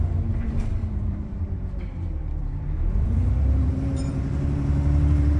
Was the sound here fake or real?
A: fake